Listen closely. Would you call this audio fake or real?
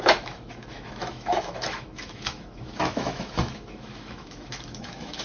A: fake